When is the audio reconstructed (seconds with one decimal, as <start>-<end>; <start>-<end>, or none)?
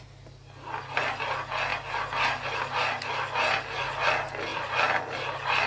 4.5-5.0